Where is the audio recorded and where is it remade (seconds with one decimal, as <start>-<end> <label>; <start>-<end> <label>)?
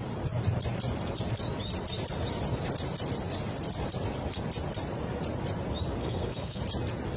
0.0-6.0 recorded; 6.0-6.6 remade; 6.6-7.2 recorded